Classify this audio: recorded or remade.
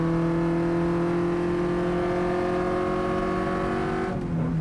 recorded